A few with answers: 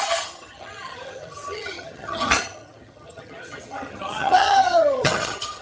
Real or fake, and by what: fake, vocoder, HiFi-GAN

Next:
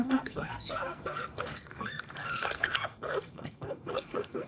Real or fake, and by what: fake, codec, SNAC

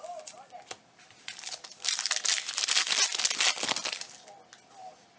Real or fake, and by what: real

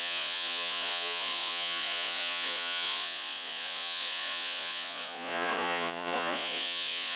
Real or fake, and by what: fake, vocoder, Vocos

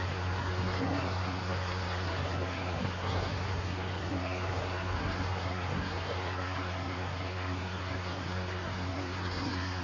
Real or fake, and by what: fake, codec, SNAC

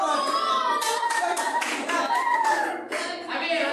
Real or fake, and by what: real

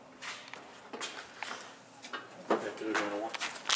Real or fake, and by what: real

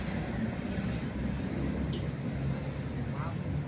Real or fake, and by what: real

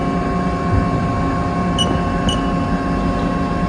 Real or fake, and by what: real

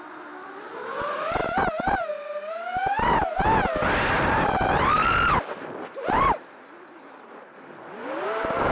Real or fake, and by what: real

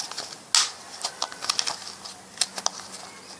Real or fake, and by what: real